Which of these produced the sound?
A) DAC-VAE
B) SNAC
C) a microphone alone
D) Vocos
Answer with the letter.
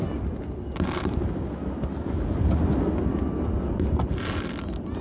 C